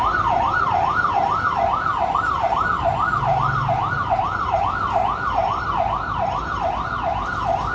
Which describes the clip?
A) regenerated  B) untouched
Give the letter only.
B